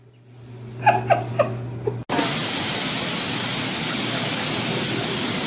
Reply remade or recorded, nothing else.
recorded